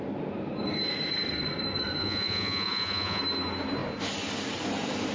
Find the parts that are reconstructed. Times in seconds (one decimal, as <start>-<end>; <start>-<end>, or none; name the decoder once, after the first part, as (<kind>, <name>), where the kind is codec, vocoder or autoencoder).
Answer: 2.0-3.2 (vocoder, Vocos)